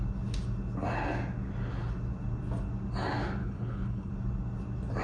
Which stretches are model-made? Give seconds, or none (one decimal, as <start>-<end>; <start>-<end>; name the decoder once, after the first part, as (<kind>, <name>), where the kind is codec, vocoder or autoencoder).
3.4-4.1 (codec, HILCodec)